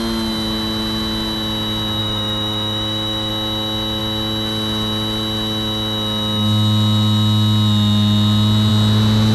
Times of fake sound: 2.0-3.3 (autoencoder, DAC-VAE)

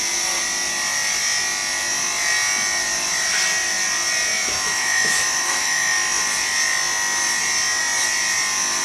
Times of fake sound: 4.3-6.2 (autoencoder, DAC-VAE)